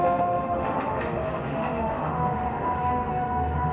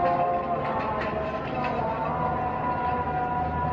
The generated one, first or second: first